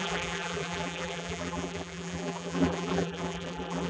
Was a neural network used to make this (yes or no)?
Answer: yes